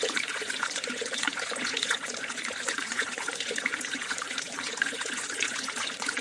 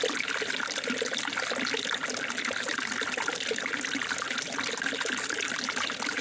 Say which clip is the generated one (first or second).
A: first